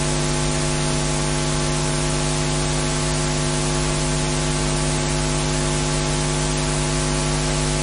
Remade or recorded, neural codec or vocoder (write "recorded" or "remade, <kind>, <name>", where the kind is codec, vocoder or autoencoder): recorded